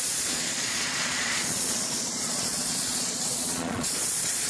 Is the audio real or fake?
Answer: fake